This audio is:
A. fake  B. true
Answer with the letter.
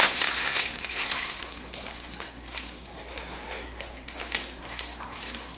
A